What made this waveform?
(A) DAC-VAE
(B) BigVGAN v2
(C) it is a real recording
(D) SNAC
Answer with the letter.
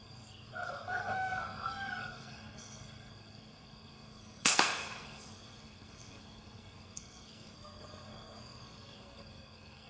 D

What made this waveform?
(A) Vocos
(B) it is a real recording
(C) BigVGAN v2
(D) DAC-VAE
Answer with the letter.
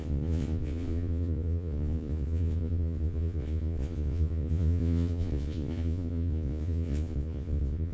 A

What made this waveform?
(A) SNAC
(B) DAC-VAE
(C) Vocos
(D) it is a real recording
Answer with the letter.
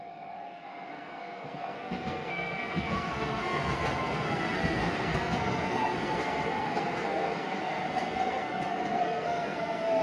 A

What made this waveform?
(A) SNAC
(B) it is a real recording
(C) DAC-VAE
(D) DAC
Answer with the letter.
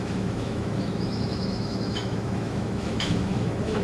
C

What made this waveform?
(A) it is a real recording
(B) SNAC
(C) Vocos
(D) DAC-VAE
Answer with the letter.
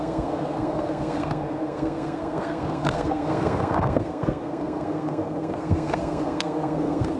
B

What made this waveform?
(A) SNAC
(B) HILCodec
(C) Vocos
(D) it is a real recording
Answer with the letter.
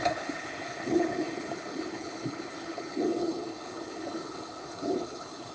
B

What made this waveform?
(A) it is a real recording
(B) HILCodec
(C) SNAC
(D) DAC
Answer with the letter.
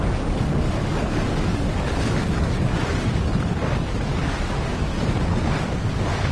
D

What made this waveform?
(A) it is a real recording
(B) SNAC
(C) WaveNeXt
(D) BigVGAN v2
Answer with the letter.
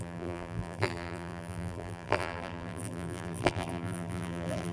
D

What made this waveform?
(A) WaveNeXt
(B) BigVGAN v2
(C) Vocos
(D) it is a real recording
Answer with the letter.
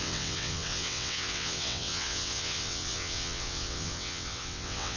A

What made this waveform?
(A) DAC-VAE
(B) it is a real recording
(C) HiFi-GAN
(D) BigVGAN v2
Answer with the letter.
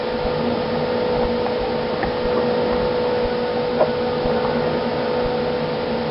B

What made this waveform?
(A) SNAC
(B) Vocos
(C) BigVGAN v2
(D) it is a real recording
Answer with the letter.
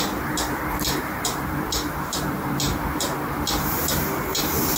C